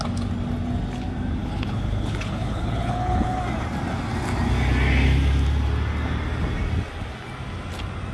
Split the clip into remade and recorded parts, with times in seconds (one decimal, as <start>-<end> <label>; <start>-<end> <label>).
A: 0.0-1.4 recorded; 1.4-3.4 remade; 3.4-8.1 recorded